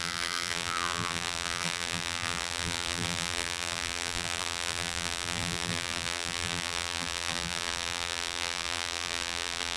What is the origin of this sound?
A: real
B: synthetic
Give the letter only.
B